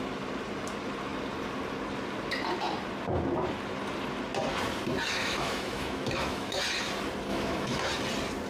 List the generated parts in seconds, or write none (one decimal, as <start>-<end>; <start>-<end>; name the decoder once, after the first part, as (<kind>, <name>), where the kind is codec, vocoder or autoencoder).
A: 5.2-6.6 (autoencoder, DAC-VAE); 7.3-7.8

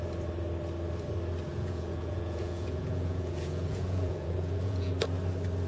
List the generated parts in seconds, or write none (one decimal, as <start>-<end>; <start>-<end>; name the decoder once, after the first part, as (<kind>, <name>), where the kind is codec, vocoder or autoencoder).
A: 1.5-4.9 (vocoder, Vocos)

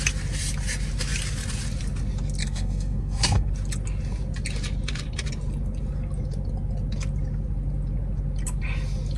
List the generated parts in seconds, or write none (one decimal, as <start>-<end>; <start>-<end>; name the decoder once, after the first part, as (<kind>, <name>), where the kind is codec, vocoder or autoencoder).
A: 2.4-3.5 (codec, SNAC)